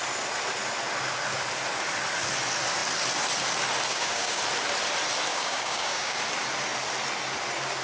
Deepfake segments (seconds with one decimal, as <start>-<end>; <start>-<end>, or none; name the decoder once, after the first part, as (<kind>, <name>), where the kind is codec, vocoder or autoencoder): 3.9-4.4 (codec, DAC); 5.3-6.2